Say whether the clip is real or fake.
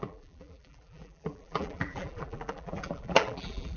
fake